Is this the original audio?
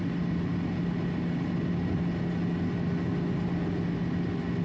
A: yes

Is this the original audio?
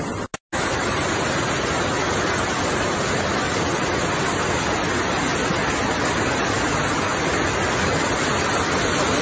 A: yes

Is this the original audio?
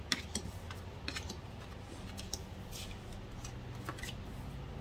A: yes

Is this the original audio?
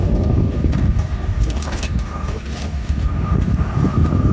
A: no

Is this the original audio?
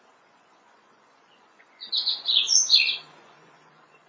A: no